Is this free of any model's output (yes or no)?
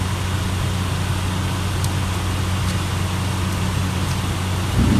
yes